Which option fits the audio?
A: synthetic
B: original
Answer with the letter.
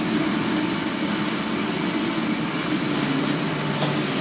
B